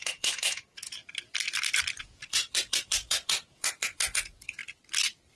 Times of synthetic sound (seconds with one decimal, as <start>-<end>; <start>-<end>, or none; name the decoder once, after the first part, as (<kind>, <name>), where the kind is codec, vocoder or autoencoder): 0.0-1.0 (vocoder, Vocos); 2.0-4.6